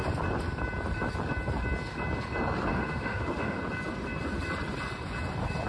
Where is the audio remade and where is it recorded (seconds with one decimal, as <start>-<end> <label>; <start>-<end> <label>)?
0.0-2.7 recorded; 2.7-3.6 remade; 3.6-5.7 recorded